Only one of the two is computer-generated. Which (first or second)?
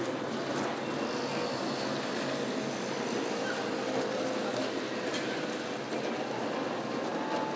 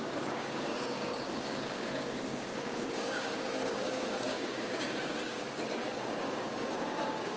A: second